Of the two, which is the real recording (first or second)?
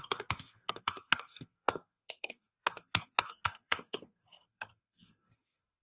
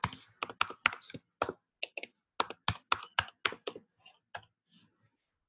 second